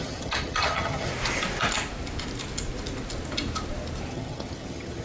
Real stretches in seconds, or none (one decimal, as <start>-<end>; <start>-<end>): 1.1-4.1